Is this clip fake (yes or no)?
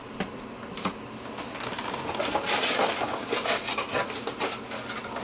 no